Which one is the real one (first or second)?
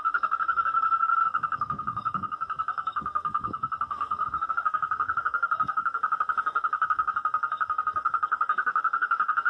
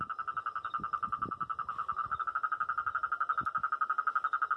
second